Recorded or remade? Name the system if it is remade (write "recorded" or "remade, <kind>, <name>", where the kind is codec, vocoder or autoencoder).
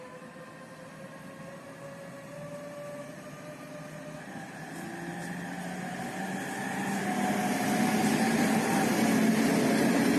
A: recorded